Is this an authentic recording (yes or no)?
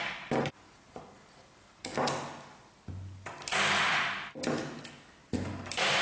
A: yes